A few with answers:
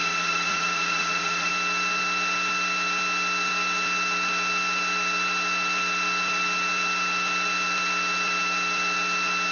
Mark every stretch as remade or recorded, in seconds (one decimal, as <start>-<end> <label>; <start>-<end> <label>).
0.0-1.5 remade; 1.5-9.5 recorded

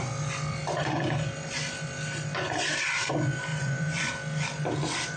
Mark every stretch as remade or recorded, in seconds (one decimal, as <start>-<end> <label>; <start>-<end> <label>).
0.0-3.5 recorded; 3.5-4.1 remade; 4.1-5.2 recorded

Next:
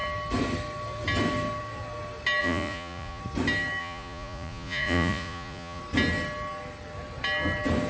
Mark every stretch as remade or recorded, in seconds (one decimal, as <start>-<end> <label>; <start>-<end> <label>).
0.0-2.4 recorded; 2.4-3.2 remade; 3.2-3.8 recorded; 3.8-5.8 remade; 5.8-7.9 recorded

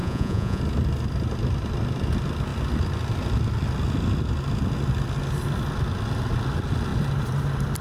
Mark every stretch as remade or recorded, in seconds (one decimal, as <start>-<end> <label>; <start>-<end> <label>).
0.0-0.6 remade; 0.6-7.8 recorded

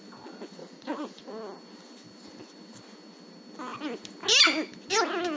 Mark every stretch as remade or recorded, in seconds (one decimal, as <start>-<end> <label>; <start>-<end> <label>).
0.0-0.6 recorded; 0.6-1.3 remade; 1.3-5.4 recorded

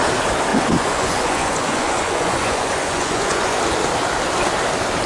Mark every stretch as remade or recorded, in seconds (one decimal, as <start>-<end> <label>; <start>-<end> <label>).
0.0-0.5 recorded; 0.5-3.6 remade; 3.6-5.1 recorded